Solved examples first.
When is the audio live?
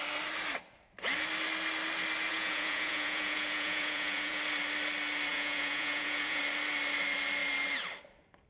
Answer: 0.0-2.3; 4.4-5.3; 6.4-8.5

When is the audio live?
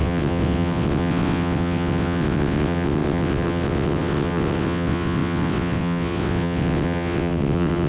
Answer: none